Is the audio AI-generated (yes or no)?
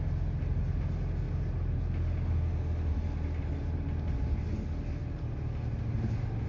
no